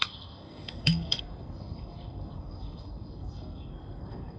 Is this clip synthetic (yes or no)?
yes